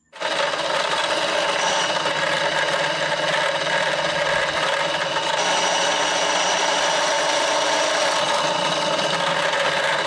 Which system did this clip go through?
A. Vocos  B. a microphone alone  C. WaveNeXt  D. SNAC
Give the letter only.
B